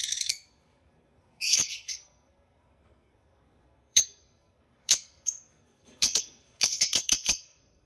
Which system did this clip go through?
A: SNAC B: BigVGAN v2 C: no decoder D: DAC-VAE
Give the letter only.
A